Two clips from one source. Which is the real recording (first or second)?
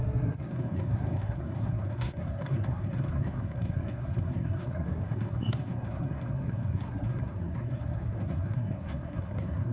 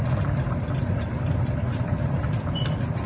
second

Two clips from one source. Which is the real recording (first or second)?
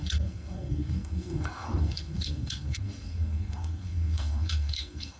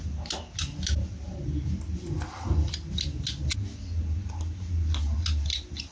second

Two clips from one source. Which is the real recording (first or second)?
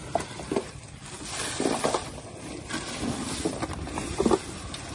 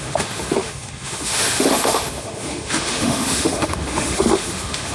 first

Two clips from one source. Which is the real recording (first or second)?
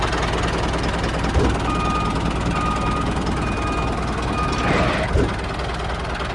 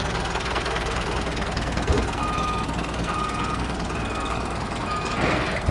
first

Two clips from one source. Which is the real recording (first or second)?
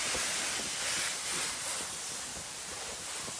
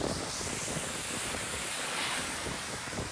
first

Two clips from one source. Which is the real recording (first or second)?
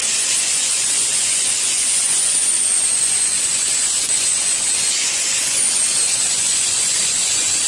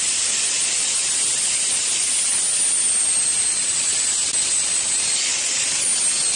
second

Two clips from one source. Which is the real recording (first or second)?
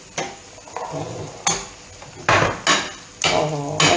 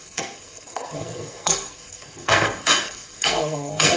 first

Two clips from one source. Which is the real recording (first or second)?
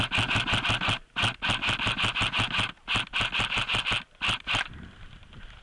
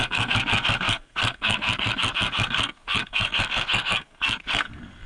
first